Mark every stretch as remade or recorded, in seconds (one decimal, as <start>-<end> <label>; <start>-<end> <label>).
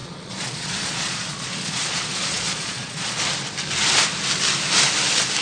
0.0-3.2 remade; 3.2-5.4 recorded